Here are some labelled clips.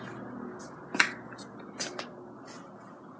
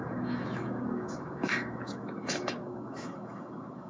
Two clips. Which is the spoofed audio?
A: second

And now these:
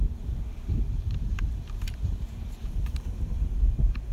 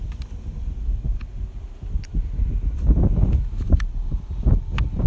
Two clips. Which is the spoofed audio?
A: first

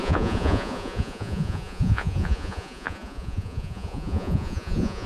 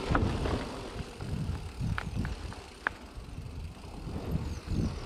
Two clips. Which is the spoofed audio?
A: first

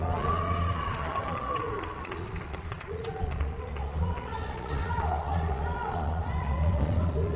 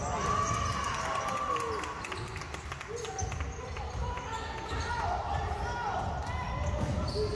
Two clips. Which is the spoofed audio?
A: first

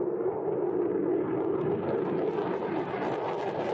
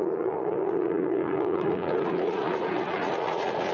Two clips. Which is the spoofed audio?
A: second